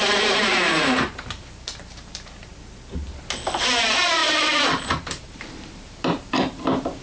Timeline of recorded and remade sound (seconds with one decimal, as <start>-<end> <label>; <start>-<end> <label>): 0.0-2.5 remade; 2.5-3.6 recorded; 3.6-7.0 remade